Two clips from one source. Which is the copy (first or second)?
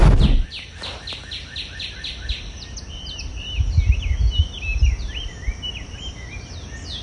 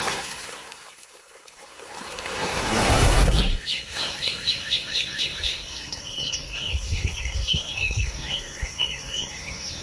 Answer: second